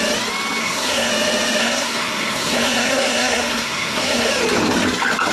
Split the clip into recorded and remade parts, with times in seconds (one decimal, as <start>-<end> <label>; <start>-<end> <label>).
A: 0.0-0.6 recorded; 0.6-1.1 remade; 1.1-1.6 recorded; 1.6-4.3 remade; 4.3-5.3 recorded